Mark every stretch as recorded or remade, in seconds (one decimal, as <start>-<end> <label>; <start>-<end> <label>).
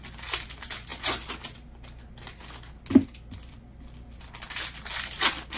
0.0-5.6 recorded